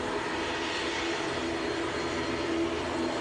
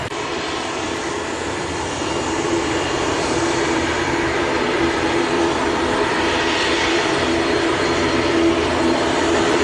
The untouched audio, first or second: first